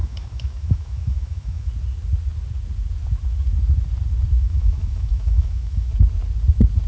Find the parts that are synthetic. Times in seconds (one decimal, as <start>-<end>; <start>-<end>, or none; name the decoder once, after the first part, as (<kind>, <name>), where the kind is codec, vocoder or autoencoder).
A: 0.0-1.7 (autoencoder, DAC-VAE); 4.4-5.9